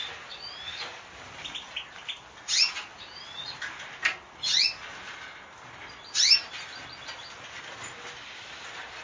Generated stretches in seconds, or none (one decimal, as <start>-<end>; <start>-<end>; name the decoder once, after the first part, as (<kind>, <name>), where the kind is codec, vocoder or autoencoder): none